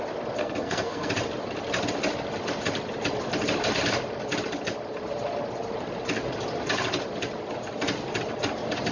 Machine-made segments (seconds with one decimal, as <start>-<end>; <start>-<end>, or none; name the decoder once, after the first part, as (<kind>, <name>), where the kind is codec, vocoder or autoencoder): 0.4-1.1 (codec, SNAC)